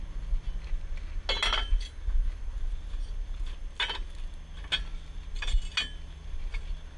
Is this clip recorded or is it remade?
recorded